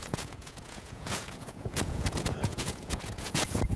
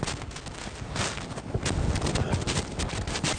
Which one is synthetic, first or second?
first